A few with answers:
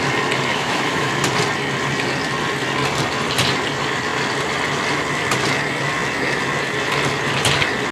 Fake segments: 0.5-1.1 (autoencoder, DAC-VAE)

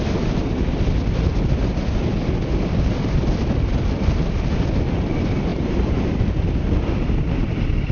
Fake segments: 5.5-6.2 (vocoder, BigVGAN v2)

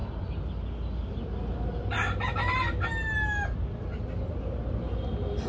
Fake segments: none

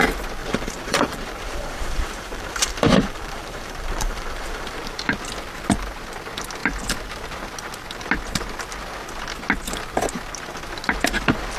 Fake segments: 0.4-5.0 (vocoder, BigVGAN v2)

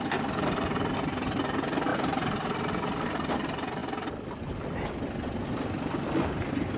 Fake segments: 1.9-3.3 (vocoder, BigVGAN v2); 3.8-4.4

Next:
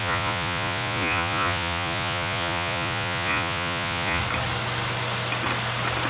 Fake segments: 0.0-4.2 (vocoder, Vocos)

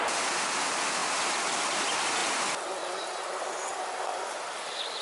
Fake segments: none

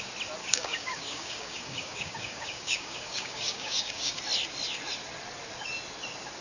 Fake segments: 0.4-4.2 (codec, DAC)